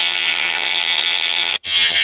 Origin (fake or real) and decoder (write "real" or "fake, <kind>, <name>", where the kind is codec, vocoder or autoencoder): fake, vocoder, HiFi-GAN